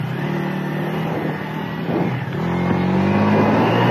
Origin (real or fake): real